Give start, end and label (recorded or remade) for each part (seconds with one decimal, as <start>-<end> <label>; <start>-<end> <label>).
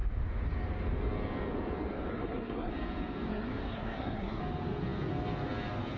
0.0-2.1 recorded; 2.1-2.7 remade; 2.7-3.3 recorded; 3.3-4.4 remade; 4.4-6.0 recorded